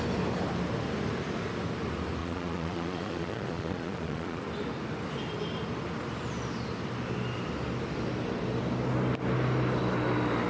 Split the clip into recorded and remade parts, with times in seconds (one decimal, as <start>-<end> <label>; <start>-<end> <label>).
0.0-2.2 recorded; 2.2-4.4 remade; 4.4-10.5 recorded